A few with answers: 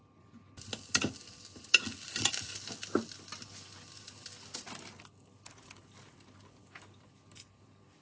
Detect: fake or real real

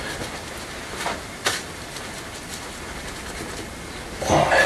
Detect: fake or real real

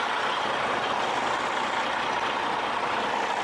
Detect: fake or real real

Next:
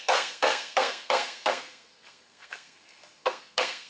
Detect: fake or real fake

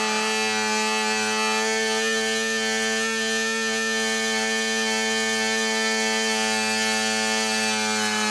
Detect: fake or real real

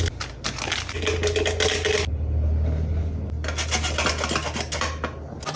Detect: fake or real real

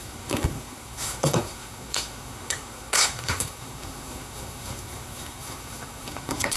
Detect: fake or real fake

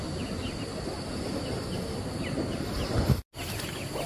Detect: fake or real real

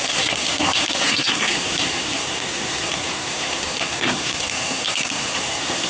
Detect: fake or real fake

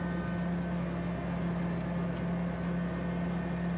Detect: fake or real real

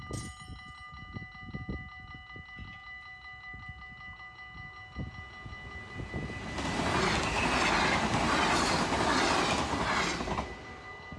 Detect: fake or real real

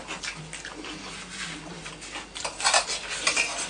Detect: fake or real real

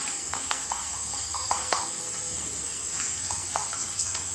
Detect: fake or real fake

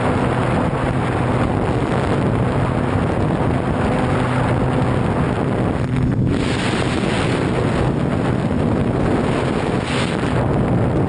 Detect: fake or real real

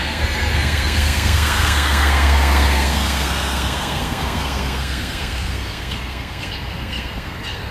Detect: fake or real fake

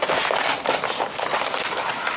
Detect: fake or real real